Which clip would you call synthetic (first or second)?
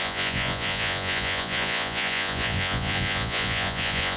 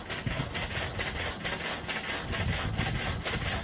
first